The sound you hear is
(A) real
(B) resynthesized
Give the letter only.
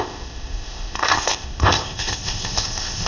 B